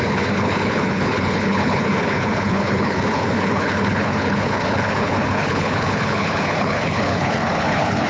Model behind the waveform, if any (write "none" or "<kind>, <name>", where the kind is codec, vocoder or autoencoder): codec, HILCodec